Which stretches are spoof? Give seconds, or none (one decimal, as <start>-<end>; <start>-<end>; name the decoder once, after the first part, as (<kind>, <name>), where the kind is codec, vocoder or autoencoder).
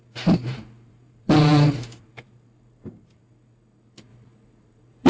0.5-3.2 (vocoder, BigVGAN v2); 4.1-5.1